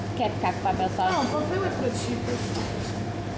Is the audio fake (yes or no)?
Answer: no